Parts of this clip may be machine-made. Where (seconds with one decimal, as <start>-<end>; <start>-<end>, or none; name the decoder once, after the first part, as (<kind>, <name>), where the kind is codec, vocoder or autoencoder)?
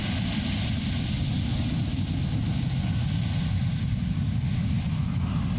none